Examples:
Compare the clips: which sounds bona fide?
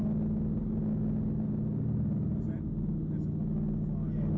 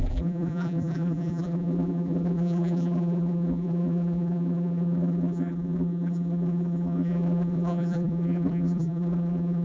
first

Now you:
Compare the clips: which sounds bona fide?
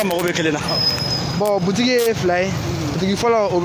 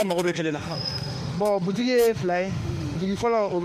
first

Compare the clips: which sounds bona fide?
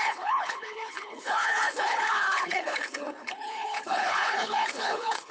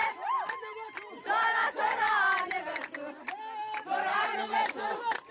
second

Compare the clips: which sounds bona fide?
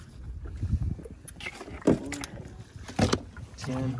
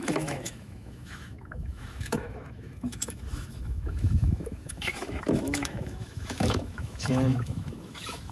first